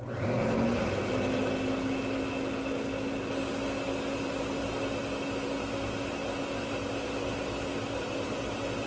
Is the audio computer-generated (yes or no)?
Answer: no